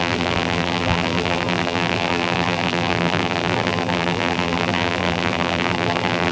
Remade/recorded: remade